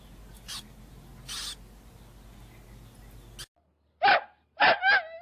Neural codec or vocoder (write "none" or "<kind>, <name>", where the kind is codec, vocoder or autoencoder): none